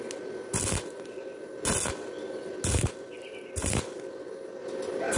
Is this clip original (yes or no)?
yes